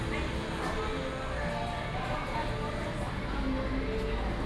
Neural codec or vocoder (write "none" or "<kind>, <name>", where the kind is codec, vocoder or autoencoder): none